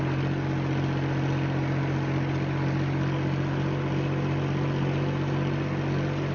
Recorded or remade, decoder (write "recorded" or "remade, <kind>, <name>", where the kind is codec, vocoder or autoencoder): recorded